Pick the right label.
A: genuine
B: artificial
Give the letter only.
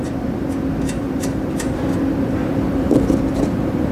B